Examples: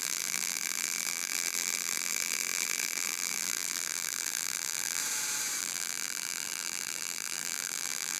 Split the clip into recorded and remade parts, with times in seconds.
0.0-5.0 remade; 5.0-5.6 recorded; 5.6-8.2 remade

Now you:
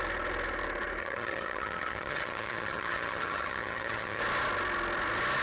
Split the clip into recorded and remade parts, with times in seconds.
0.0-1.0 recorded; 1.0-4.2 remade; 4.2-5.4 recorded